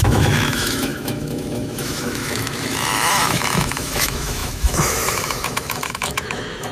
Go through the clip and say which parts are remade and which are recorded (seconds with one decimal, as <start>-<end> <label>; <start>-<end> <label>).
0.0-6.7 remade